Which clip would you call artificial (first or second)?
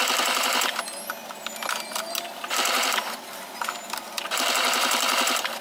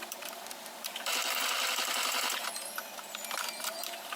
second